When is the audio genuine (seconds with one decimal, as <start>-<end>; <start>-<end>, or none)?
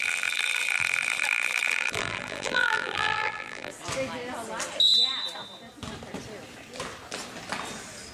3.7-8.1